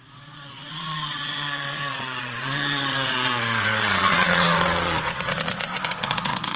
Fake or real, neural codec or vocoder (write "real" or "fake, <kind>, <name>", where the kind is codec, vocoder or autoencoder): fake, vocoder, Vocos